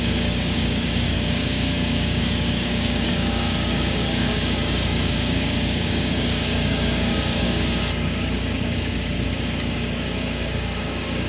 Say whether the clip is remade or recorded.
remade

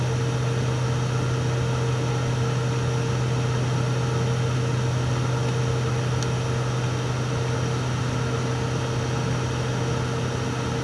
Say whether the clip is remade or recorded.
recorded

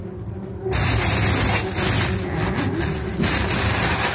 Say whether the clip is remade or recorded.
recorded